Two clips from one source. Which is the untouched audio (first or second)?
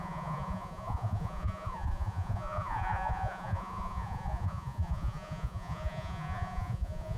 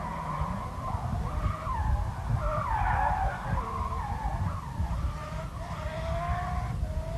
second